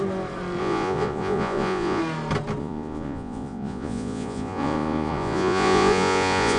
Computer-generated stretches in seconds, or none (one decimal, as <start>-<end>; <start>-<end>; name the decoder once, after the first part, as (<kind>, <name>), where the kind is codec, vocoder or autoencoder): 0.6-2.0 (vocoder, Vocos); 2.6-6.6